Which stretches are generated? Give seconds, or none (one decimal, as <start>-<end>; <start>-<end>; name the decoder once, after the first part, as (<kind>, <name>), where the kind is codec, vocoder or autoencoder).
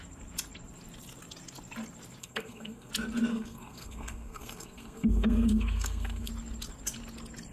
2.2-2.9 (codec, SNAC); 3.3-6.3